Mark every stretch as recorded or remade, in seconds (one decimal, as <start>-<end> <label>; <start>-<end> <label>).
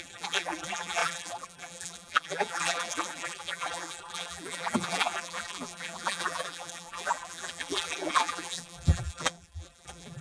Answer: 0.0-10.2 remade